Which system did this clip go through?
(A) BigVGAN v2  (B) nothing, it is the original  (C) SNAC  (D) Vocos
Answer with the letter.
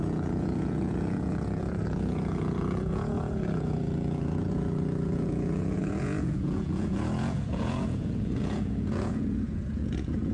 D